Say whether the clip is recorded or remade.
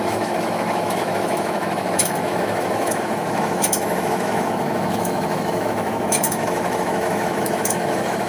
remade